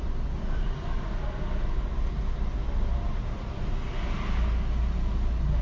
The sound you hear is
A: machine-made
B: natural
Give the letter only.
B